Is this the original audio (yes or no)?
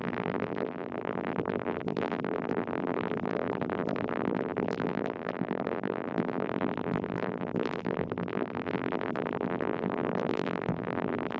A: no